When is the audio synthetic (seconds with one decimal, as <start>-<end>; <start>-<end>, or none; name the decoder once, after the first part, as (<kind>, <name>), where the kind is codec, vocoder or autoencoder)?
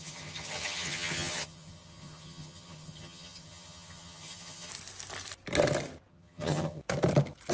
0.0-4.7 (vocoder, HiFi-GAN); 6.1-6.8